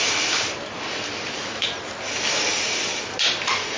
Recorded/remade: recorded